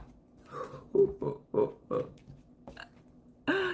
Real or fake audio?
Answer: real